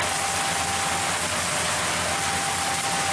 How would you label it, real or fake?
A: real